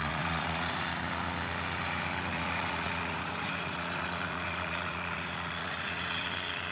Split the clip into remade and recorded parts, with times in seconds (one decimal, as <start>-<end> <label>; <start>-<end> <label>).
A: 0.0-0.8 remade; 0.8-2.3 recorded; 2.3-6.3 remade; 6.3-6.7 recorded